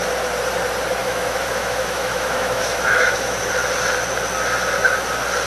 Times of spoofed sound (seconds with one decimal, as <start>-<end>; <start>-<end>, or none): 1.0-3.5